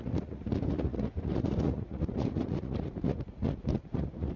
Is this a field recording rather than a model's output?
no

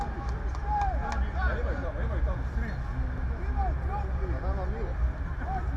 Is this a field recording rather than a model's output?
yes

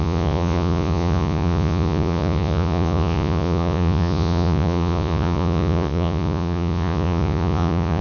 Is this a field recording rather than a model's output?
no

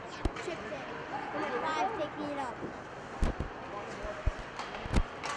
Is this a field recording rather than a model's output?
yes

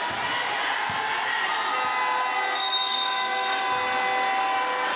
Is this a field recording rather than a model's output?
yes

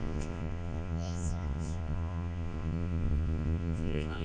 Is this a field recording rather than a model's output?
no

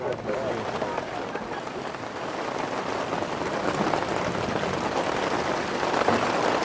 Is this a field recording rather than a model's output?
yes